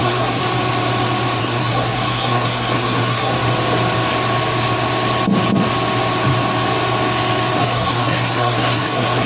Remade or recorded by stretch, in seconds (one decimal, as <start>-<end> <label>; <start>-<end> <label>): 0.0-0.4 remade; 0.4-1.4 recorded; 1.4-3.3 remade; 3.3-7.6 recorded; 7.6-9.3 remade